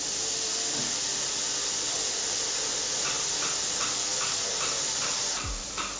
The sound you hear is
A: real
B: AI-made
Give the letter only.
A